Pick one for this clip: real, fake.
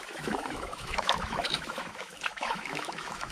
fake